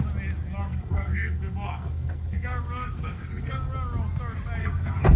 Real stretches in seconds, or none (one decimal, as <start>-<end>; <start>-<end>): 0.0-0.6; 3.7-4.6